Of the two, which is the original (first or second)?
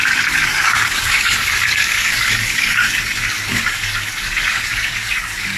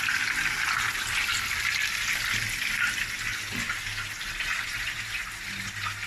second